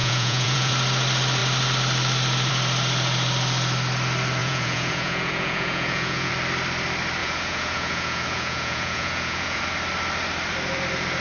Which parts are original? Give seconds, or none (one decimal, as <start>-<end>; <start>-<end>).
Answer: 0.7-4.4; 6.3-7.2; 9.6-11.2